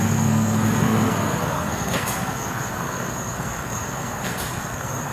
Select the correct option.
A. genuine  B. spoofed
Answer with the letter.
B